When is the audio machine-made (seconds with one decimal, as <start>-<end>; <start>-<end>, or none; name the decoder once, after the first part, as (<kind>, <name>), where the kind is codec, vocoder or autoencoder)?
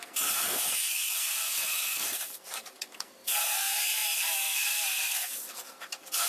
0.0-6.3 (codec, SNAC)